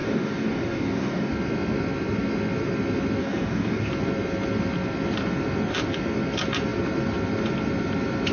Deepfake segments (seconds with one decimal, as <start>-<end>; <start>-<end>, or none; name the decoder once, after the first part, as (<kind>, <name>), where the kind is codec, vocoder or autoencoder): 0.0-1.3 (codec, DAC); 3.2-3.9